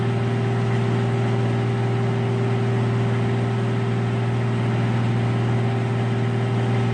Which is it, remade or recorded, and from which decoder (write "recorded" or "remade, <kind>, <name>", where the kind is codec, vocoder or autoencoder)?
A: recorded